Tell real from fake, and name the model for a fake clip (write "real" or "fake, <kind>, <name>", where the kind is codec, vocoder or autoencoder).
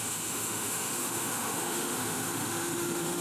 fake, autoencoder, DAC-VAE